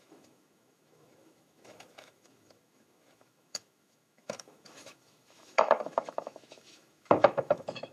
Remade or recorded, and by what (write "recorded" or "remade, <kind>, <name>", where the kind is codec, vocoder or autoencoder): remade, autoencoder, DAC-VAE